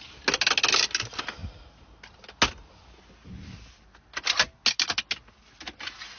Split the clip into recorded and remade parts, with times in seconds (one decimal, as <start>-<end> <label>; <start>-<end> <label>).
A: 0.0-6.2 recorded